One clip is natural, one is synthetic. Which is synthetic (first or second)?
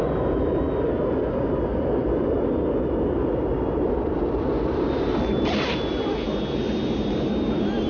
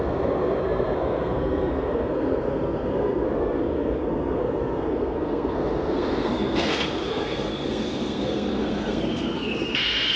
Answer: second